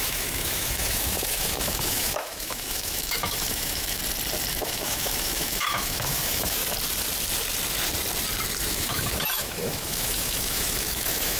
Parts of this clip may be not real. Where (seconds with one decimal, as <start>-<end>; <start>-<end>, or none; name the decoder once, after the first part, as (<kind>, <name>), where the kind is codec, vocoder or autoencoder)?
0.0-4.0 (autoencoder, DAC-VAE); 4.5-6.6; 8.6-11.4